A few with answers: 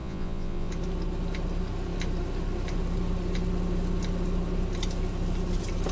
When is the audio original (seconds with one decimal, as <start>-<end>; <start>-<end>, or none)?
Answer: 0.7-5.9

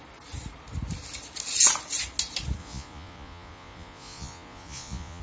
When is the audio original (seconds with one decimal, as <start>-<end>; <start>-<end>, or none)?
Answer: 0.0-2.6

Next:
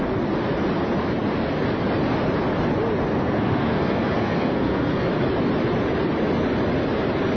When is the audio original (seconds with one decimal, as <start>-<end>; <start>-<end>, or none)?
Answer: 0.0-3.1; 5.1-7.4

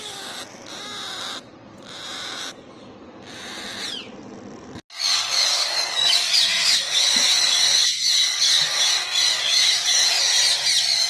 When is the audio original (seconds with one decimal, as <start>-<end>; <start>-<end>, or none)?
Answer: 0.0-5.5; 8.9-9.3; 10.2-11.1

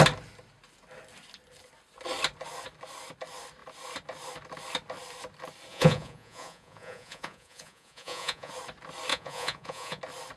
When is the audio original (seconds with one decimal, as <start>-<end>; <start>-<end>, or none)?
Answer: 0.0-5.7; 8.5-9.1; 10.0-10.4

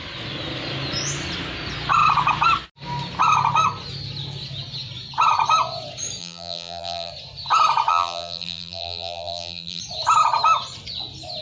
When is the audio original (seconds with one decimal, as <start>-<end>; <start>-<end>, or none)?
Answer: 0.0-6.2; 7.1-7.9; 9.8-11.4